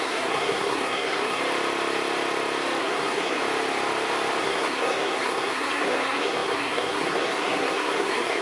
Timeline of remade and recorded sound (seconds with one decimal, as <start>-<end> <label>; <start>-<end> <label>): 0.0-1.4 remade; 1.4-2.8 recorded; 2.8-3.4 remade; 3.4-4.4 recorded; 4.4-8.4 remade